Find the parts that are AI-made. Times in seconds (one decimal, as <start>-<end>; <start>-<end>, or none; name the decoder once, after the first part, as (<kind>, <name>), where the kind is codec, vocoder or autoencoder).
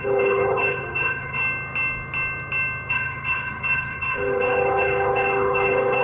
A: 0.0-1.4 (codec, HILCodec); 2.9-6.0